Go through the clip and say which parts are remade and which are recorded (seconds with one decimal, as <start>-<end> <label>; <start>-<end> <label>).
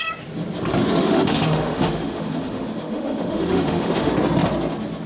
0.0-1.0 recorded; 1.0-4.1 remade; 4.1-5.1 recorded